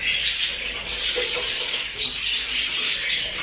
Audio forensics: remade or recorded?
recorded